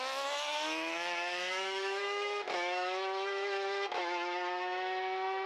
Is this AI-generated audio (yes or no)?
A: yes